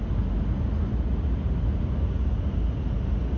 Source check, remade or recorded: recorded